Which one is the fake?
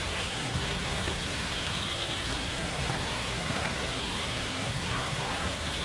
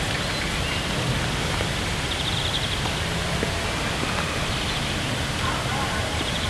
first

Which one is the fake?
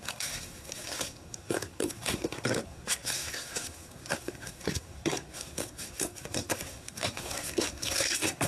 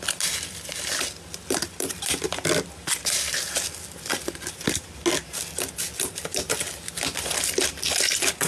first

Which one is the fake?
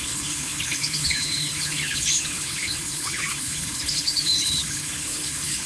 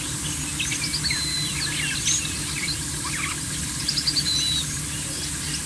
first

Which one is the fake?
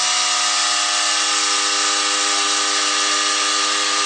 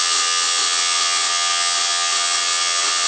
second